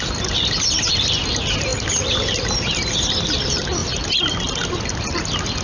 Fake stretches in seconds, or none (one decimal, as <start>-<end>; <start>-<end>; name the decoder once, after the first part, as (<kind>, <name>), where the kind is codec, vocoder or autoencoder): none